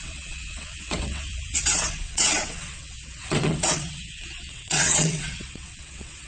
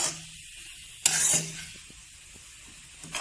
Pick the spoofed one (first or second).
first